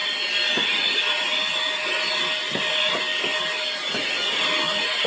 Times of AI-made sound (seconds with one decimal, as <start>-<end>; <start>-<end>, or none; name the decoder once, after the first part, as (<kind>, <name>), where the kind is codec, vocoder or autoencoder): 0.7-1.3 (vocoder, BigVGAN v2); 4.4-5.1